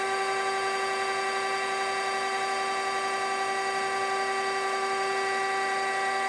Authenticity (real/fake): real